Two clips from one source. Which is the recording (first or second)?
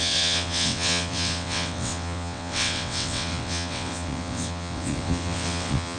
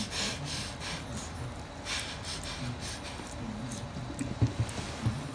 second